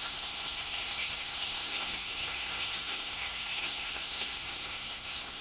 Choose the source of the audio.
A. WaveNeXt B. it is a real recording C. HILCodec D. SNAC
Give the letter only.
D